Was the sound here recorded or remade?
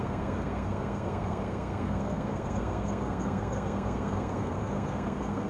remade